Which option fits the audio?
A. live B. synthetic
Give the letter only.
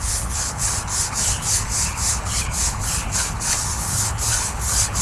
B